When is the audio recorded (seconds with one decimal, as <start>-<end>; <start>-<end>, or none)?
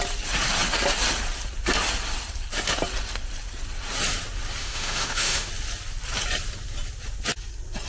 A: 0.0-4.6; 5.5-7.9